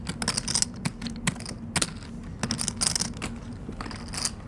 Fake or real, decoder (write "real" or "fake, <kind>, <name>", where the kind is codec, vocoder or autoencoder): real